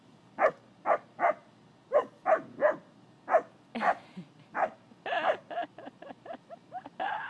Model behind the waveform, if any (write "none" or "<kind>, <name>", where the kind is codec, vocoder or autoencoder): none